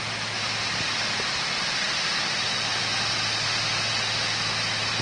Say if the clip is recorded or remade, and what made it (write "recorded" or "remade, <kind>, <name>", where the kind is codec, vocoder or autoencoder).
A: recorded